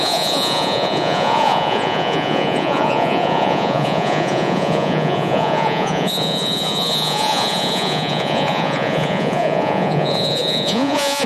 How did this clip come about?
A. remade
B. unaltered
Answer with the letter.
A